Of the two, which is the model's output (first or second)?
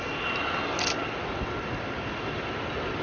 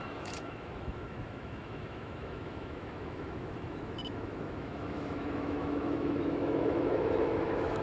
second